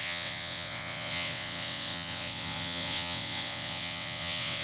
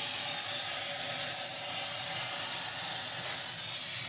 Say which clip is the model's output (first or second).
first